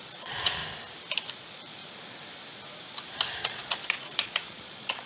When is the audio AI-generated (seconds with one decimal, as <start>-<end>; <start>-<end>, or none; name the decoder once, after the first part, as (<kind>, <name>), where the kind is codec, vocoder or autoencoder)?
0.0-0.6 (vocoder, Vocos); 1.4-1.8; 3.4-5.1